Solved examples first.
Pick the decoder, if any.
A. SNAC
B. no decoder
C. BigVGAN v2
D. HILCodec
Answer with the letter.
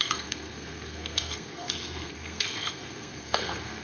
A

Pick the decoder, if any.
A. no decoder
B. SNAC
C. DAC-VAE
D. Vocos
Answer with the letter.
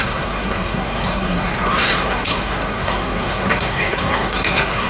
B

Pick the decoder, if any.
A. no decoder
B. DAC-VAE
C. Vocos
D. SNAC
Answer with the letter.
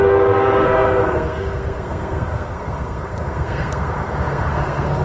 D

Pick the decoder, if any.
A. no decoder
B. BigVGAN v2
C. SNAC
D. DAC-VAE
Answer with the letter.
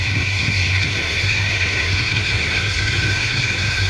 C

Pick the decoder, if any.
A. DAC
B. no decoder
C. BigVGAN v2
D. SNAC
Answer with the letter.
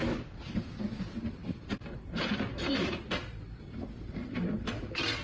B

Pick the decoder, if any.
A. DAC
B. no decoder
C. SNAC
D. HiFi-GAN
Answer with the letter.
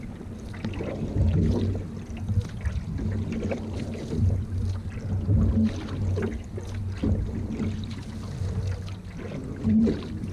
B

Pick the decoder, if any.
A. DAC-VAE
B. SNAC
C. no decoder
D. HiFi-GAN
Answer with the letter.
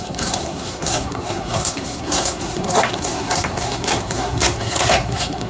B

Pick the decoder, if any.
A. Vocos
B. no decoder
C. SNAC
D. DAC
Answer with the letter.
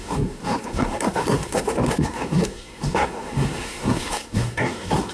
C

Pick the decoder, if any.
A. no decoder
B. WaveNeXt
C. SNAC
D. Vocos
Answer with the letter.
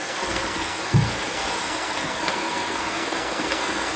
C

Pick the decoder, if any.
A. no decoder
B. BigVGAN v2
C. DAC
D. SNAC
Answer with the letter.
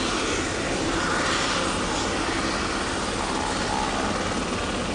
A